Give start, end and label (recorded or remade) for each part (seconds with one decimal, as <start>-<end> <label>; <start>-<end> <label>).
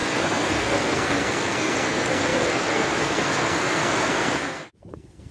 0.0-5.3 remade